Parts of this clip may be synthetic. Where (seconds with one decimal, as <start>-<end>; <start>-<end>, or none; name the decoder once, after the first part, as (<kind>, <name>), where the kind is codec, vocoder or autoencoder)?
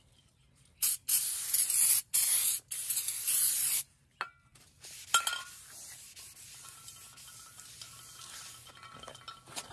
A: none